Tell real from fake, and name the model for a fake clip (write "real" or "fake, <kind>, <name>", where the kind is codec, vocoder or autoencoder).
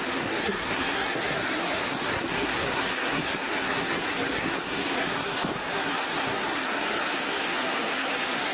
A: fake, codec, SNAC